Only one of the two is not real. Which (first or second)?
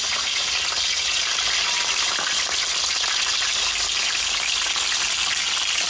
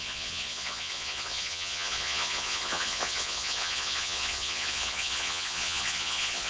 second